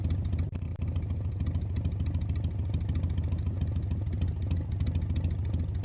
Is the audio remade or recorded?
recorded